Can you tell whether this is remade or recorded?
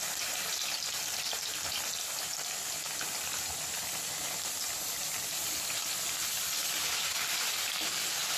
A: recorded